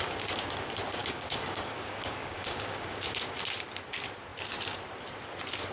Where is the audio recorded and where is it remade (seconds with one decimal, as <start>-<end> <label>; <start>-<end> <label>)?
0.0-1.0 recorded; 1.0-3.3 remade; 3.3-5.7 recorded